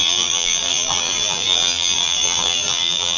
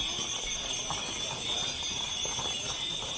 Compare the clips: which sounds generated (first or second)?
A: first